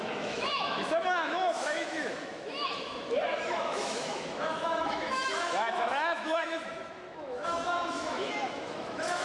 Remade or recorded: remade